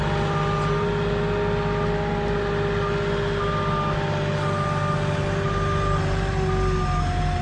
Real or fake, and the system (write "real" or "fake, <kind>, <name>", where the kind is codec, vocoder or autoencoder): real